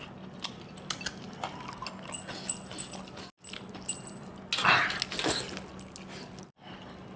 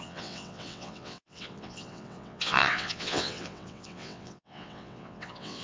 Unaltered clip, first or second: first